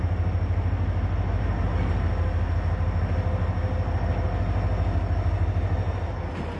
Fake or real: real